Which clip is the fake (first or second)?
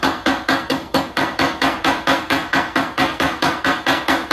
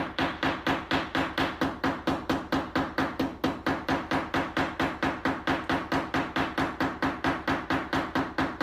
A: first